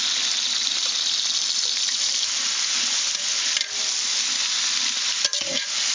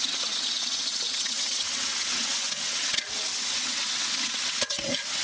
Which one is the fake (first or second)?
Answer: second